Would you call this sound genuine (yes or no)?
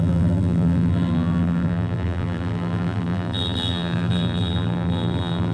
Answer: no